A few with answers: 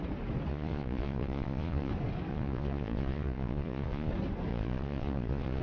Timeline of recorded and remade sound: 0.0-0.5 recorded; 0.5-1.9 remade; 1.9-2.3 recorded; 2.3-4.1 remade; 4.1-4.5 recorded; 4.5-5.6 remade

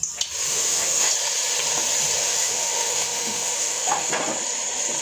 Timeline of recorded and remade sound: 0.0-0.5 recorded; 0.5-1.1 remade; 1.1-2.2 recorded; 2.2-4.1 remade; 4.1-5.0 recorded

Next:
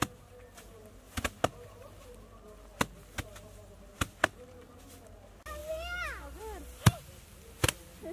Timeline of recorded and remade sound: 0.0-8.1 recorded

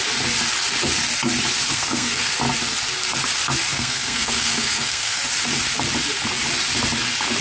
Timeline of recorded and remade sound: 0.0-1.7 recorded; 1.7-2.3 remade; 2.3-3.7 recorded; 3.7-5.2 remade; 5.2-7.4 recorded

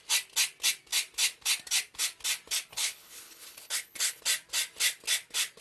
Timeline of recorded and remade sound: 0.0-2.7 recorded; 2.7-4.2 remade; 4.2-5.6 recorded

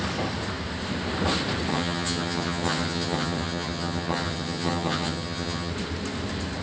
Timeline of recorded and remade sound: 0.0-1.7 recorded; 1.7-5.7 remade; 5.7-6.6 recorded